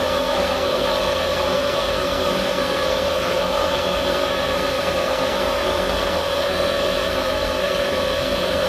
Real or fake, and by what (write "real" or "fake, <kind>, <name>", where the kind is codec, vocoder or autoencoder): fake, codec, SNAC